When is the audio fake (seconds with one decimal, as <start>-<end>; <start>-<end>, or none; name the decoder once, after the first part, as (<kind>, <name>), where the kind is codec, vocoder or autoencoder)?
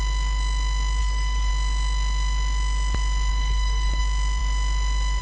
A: 1.0-1.5 (codec, DAC); 3.3-4.0